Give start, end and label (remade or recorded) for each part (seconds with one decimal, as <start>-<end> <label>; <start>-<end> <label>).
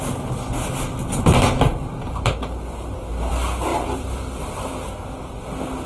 0.0-1.7 recorded; 1.7-3.3 remade; 3.3-3.7 recorded; 3.7-4.7 remade; 4.7-5.9 recorded